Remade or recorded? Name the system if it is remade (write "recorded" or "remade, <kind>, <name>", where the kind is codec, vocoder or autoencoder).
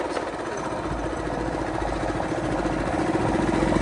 recorded